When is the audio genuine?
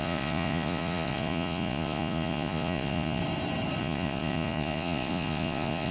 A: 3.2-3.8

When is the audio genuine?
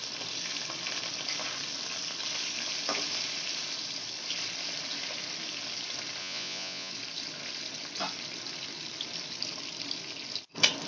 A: 0.0-6.2; 6.9-10.9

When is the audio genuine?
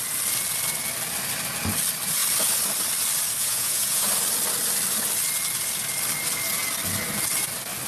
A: 0.0-3.4; 4.1-7.9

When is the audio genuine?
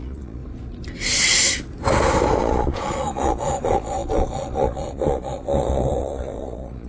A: 0.4-2.4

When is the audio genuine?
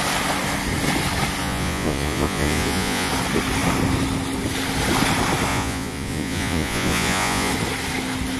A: 0.0-1.4; 3.1-5.5; 7.5-8.4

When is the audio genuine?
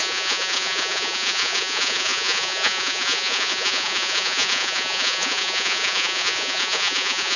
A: none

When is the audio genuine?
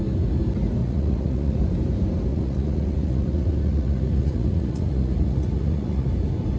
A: 0.0-0.8; 1.6-2.3; 6.1-6.6